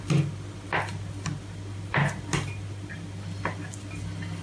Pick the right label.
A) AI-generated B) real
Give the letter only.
B